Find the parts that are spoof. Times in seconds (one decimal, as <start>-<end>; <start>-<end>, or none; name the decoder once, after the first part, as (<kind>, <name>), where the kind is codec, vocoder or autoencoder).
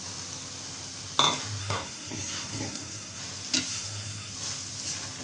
1.6-3.2 (codec, SNAC); 3.7-4.3